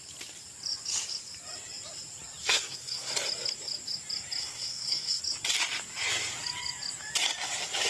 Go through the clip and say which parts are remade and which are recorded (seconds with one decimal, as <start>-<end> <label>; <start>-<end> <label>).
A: 0.0-2.4 recorded; 2.4-3.1 remade; 3.1-4.4 recorded; 4.4-5.2 remade; 5.2-7.9 recorded